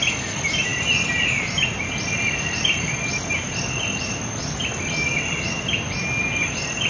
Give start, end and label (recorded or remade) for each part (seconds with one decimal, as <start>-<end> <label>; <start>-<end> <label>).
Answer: 0.0-6.9 recorded